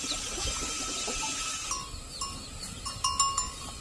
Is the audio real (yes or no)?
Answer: yes